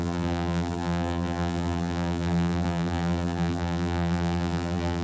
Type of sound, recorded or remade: remade